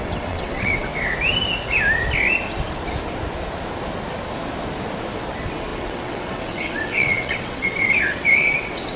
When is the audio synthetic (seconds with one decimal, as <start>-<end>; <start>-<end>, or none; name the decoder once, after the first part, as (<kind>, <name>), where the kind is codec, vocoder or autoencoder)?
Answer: 0.0-0.9 (vocoder, WaveNeXt); 5.3-9.0